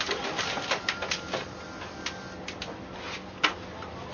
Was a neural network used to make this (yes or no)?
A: no